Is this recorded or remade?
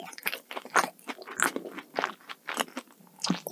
recorded